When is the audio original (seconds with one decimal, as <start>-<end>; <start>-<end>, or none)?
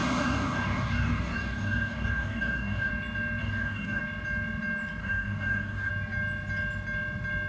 2.9-3.4; 4.0-5.0; 5.9-7.5